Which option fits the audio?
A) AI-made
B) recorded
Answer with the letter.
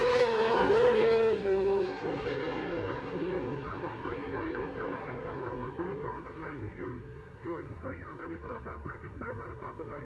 A